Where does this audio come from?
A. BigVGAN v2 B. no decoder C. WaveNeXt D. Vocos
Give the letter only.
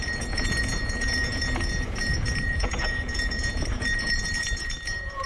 D